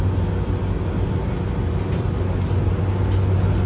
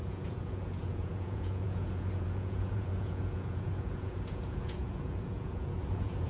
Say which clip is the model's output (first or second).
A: second